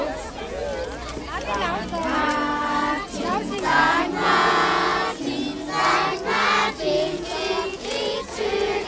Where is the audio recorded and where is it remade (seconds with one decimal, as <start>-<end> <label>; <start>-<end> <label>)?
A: 0.0-0.6 remade; 0.6-3.2 recorded; 3.2-4.9 remade; 4.9-6.8 recorded; 6.8-8.9 remade